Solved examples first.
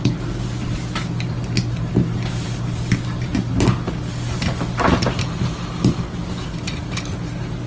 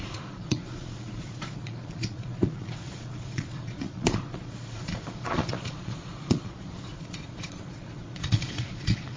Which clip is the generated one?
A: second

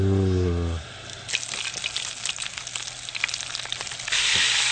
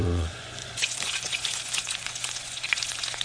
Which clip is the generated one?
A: second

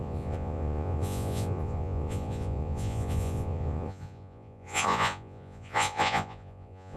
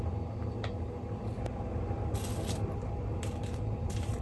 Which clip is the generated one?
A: first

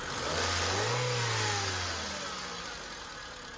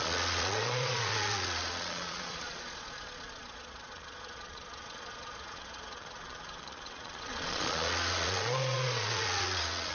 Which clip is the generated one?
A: second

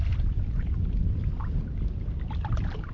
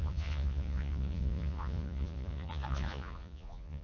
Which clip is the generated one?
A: second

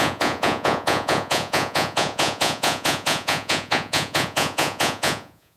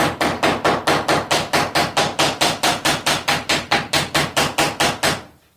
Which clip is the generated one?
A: first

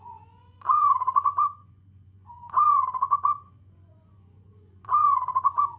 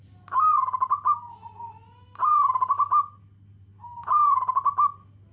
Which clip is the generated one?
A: first